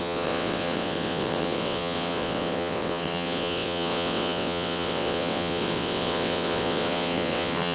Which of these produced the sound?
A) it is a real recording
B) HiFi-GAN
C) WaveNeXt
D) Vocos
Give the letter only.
C